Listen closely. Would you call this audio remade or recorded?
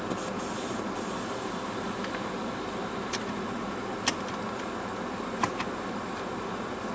recorded